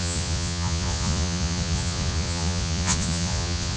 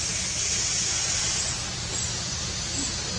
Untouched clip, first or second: second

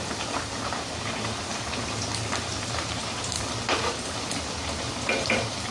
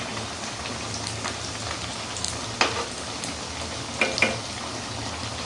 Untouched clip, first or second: second